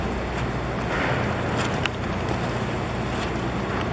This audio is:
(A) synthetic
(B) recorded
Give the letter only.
B